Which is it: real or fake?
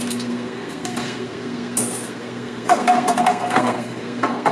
fake